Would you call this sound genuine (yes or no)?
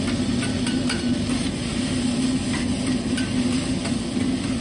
yes